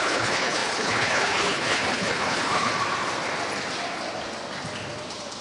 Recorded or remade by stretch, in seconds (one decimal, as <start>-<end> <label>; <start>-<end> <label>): 0.0-2.7 remade; 2.7-5.4 recorded